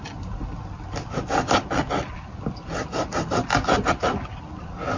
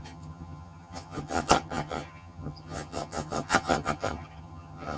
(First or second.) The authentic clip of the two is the first